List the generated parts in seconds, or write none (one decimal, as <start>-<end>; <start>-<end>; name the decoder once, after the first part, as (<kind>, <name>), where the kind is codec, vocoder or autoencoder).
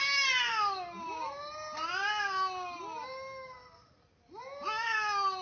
none